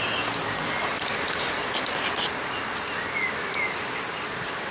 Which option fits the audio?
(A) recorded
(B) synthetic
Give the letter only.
A